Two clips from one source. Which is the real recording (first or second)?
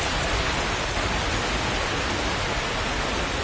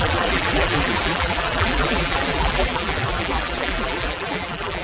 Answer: first